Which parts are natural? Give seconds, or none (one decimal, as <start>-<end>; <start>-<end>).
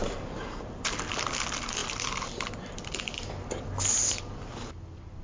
1.1-1.8; 4.2-5.2